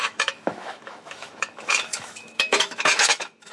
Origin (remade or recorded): remade